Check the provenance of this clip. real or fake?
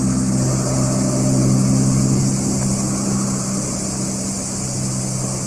real